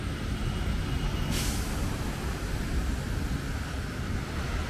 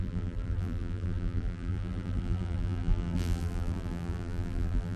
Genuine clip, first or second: first